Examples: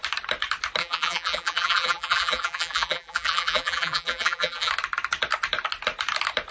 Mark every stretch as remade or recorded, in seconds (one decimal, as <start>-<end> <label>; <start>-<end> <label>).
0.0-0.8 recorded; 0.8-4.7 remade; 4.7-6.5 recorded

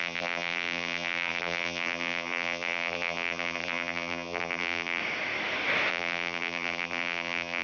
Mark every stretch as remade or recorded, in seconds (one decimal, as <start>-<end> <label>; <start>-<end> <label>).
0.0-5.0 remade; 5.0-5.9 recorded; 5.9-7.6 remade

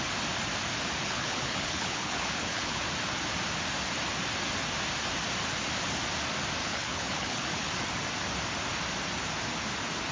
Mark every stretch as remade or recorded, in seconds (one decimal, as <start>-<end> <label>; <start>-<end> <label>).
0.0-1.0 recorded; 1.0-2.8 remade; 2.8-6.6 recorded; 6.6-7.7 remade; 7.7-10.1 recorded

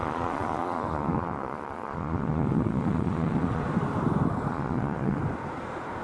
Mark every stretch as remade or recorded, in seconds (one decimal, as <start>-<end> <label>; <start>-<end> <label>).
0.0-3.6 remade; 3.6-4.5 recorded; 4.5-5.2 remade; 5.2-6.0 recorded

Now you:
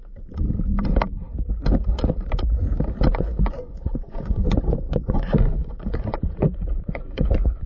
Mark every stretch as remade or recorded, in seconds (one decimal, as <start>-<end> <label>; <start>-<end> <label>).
0.0-3.1 recorded; 3.1-7.7 remade

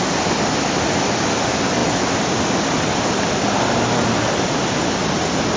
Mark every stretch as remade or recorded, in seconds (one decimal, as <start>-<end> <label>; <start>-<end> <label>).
0.0-5.6 recorded

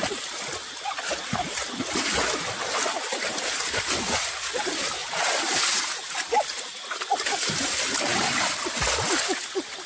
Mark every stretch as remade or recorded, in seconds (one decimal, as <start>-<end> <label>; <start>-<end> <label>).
0.0-5.0 recorded; 5.0-5.6 remade; 5.6-9.9 recorded